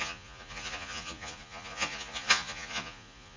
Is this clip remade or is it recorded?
remade